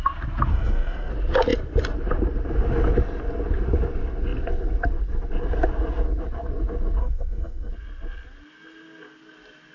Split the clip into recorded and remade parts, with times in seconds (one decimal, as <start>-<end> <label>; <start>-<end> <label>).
0.0-0.5 recorded; 0.5-1.1 remade; 1.1-7.0 recorded; 7.0-7.7 remade; 7.7-9.7 recorded